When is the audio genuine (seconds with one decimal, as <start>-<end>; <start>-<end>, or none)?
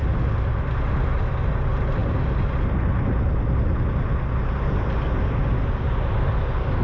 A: 0.0-6.8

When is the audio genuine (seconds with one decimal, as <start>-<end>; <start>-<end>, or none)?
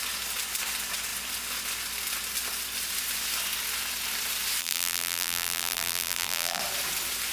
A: 0.0-4.6; 6.6-7.3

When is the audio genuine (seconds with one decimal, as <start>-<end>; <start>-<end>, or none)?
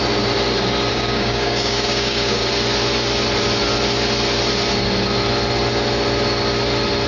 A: 0.0-0.9; 2.4-7.1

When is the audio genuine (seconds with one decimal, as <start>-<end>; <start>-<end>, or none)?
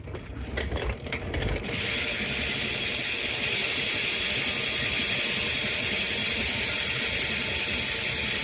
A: 0.0-8.4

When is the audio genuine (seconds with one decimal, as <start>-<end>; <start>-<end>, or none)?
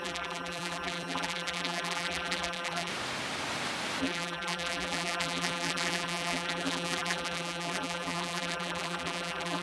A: 2.9-4.0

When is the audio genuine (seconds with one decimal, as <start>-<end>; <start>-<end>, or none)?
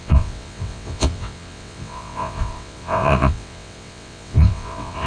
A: none